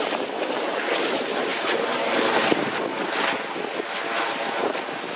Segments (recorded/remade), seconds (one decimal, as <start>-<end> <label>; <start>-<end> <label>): 0.0-5.2 recorded